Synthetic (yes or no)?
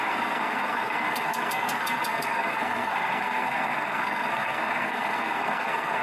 yes